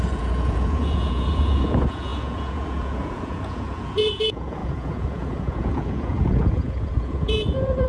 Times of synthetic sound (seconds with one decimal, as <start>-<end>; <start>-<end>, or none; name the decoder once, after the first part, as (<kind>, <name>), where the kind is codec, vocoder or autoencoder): 0.0-7.9 (vocoder, Vocos)